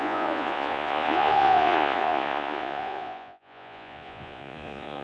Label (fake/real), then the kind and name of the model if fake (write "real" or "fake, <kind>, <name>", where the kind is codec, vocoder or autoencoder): fake, vocoder, Vocos